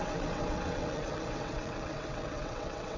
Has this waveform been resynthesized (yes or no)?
yes